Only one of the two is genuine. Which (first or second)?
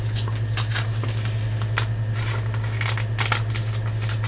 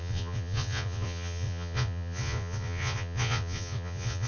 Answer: first